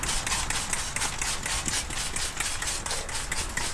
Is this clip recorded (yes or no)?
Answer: yes